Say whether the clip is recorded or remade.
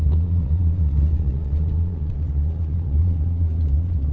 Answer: remade